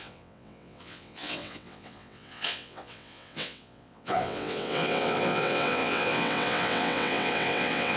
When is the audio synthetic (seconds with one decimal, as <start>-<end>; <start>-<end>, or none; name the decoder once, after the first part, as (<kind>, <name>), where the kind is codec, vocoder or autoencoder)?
0.0-8.0 (vocoder, WaveNeXt)

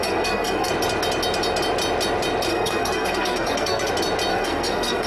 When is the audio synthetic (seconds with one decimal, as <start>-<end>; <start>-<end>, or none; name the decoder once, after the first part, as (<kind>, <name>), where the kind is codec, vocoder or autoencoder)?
0.0-0.7 (codec, SNAC); 2.5-3.9; 4.3-5.1

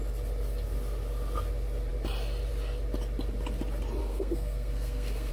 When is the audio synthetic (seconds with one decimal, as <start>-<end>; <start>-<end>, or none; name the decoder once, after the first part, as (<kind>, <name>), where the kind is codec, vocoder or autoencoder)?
4.0-5.3 (codec, SNAC)